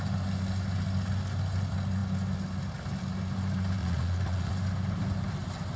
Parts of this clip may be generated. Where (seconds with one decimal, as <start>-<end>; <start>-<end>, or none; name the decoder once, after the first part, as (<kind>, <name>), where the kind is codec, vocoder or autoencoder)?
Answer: 3.8-4.5 (vocoder, Vocos)